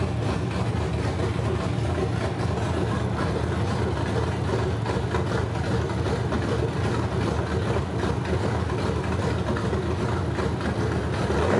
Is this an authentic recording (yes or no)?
yes